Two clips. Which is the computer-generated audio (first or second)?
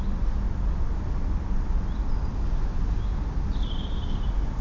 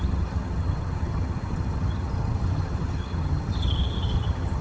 second